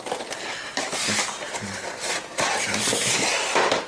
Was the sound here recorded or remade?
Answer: recorded